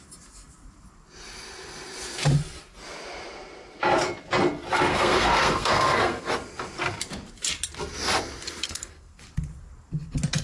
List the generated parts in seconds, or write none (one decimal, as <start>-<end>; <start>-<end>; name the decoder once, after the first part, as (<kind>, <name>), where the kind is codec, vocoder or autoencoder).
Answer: 4.9-6.3 (codec, SNAC); 8.6-9.2